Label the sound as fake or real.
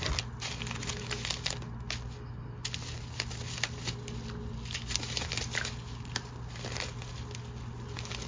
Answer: real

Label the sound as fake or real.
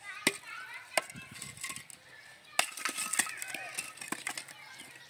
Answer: real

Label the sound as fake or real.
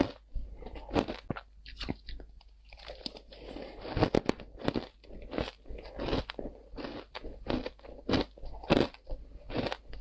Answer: real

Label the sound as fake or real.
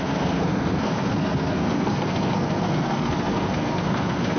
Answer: fake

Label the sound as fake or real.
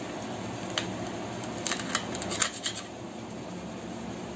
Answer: real